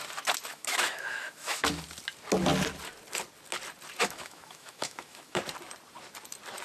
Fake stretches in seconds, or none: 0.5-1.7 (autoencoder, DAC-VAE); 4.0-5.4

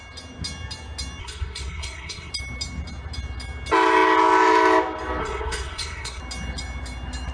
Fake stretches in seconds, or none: 1.2-2.3 (codec, SNAC); 5.2-6.2

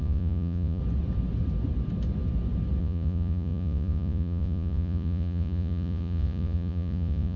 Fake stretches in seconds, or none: 0.0-0.8 (vocoder, Vocos); 2.8-7.4

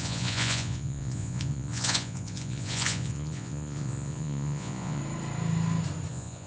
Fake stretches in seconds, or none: 0.0-5.0 (vocoder, Vocos); 6.1-6.5

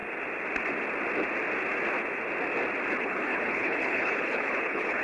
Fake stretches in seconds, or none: 3.0-5.0 (codec, HILCodec)

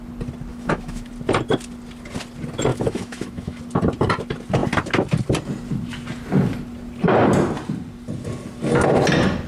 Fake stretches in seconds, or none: 0.5-1.1 (autoencoder, DAC-VAE); 2.7-3.6